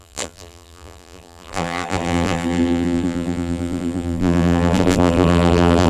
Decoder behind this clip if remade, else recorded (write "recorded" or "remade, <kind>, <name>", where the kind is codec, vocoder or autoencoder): remade, vocoder, BigVGAN v2